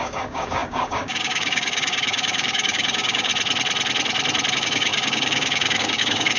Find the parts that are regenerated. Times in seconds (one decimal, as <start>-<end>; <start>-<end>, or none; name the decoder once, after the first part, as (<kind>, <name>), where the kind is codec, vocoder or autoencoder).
0.0-3.3 (codec, DAC); 4.5-6.4